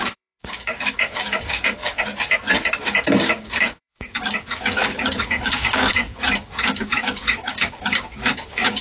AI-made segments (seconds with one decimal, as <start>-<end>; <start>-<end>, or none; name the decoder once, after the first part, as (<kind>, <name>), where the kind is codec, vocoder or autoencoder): 0.0-2.1 (codec, DAC); 2.8-8.8